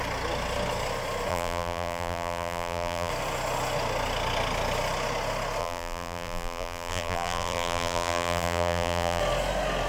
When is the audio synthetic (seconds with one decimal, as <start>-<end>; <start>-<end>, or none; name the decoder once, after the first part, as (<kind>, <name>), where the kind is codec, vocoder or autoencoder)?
1.3-3.1 (vocoder, BigVGAN v2); 5.6-9.2